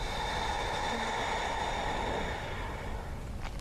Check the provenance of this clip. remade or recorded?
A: recorded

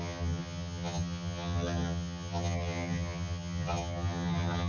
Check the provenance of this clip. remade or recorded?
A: remade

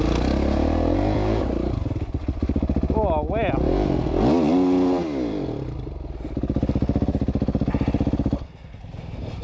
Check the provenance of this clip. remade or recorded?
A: recorded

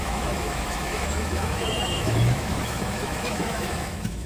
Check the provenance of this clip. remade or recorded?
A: remade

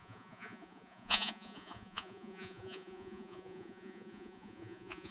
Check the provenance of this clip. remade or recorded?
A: remade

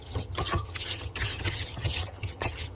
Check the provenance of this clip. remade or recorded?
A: remade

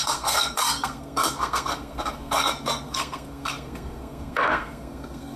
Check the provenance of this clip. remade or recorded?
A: remade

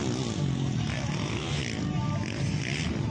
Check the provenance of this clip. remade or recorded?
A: recorded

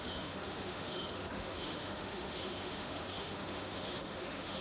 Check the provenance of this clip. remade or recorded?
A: remade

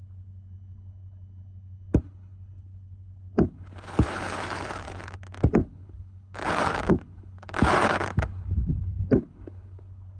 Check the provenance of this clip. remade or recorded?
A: remade